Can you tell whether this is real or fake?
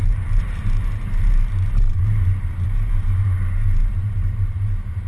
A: fake